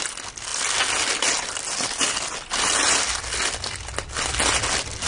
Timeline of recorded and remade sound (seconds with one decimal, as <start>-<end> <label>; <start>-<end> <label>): 0.0-5.1 recorded